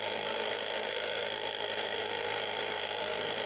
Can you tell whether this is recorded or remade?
remade